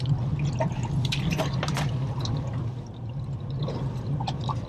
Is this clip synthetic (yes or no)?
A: no